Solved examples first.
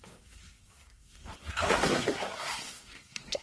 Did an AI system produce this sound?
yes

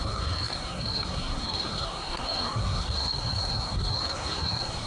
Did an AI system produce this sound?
yes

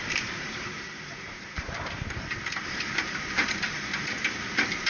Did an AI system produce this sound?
yes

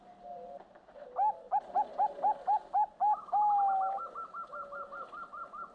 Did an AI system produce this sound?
no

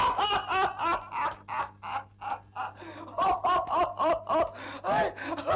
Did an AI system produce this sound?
no